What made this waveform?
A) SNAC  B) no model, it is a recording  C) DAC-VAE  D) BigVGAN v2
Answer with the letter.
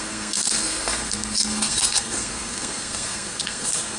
A